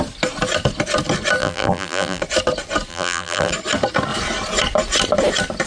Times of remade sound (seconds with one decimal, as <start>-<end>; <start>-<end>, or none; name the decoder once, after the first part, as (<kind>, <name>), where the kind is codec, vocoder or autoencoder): 1.4-2.2 (vocoder, BigVGAN v2); 2.9-3.5